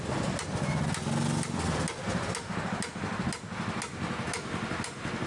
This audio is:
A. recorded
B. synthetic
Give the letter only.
A